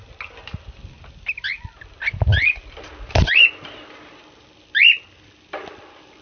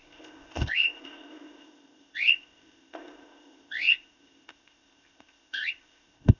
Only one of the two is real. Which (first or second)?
first